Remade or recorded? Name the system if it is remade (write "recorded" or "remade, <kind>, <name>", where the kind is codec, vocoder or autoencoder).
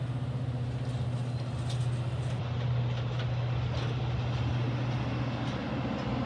recorded